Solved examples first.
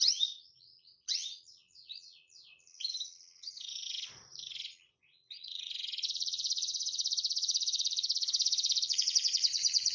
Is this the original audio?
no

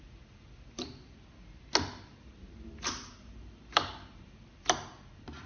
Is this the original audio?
yes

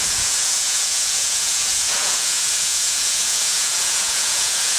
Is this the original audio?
no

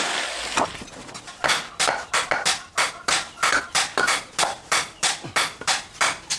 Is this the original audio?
yes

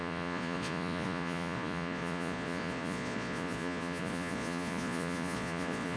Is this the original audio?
no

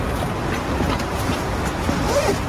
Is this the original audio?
yes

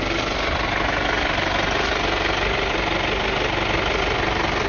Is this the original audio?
yes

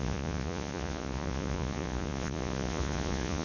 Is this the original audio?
no